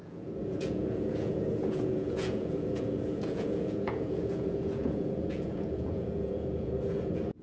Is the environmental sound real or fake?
fake